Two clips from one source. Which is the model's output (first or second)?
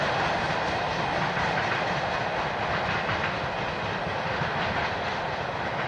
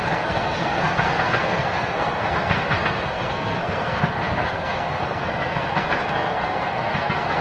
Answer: second